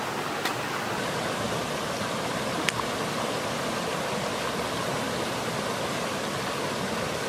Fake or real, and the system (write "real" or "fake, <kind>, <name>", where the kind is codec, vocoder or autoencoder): real